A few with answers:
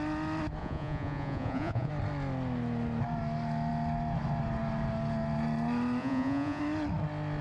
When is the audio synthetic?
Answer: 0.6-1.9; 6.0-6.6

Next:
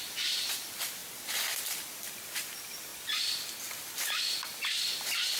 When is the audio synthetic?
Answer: 0.0-1.0; 1.9-2.9

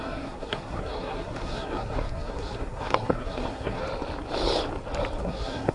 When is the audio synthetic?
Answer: 0.0-3.8; 5.2-5.7

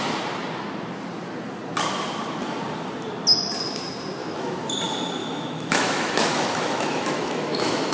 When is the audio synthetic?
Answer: 4.2-4.7; 5.2-7.9